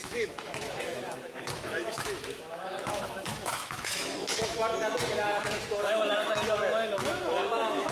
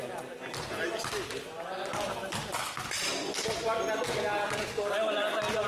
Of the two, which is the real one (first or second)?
second